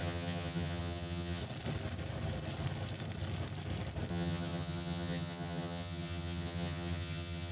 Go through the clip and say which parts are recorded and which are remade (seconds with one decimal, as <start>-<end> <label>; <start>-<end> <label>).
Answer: 0.0-1.4 remade; 1.4-4.1 recorded; 4.1-7.5 remade